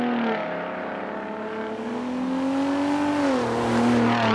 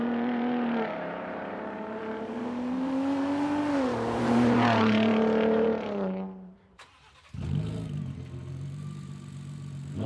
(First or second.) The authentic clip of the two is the first